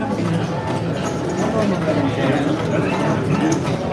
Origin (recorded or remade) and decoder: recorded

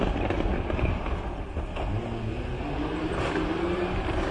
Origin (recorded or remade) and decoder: recorded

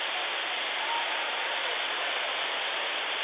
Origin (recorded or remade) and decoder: recorded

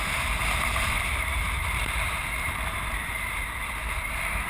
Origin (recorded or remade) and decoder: recorded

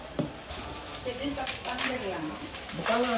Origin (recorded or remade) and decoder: recorded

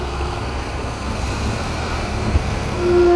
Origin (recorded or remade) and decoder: remade, codec, SNAC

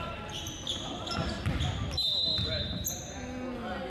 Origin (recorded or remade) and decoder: recorded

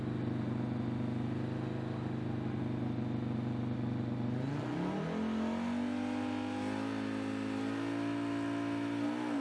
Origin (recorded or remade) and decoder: recorded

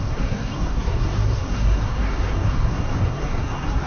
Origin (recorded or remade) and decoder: remade, codec, SNAC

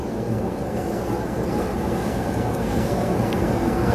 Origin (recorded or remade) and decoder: remade, codec, SNAC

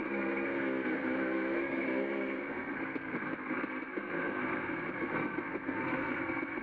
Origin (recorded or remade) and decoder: remade, codec, SNAC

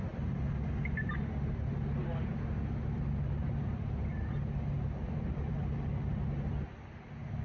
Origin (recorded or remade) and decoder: recorded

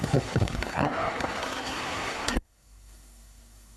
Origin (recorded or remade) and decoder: remade, codec, SNAC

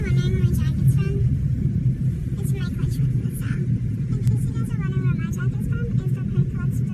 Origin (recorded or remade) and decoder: recorded